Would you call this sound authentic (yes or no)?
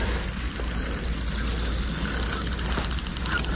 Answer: yes